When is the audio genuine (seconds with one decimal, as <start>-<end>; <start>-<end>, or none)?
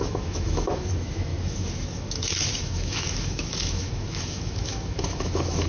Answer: none